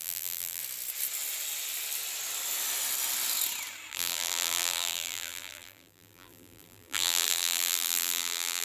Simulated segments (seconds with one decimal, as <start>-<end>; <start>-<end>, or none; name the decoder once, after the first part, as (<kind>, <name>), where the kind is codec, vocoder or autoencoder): 0.0-0.6 (vocoder, BigVGAN v2); 3.9-8.6